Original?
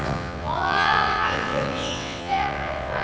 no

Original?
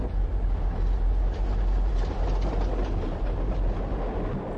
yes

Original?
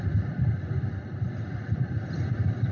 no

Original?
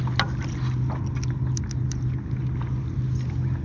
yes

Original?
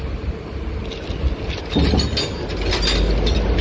yes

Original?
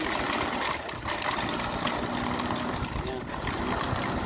yes